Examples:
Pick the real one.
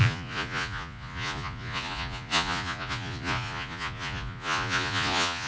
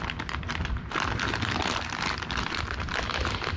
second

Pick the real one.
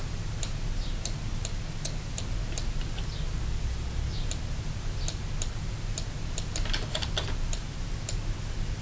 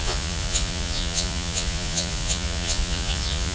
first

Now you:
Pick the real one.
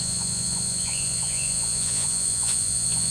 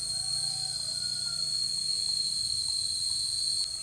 second